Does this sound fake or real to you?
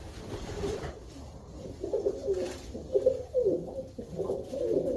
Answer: real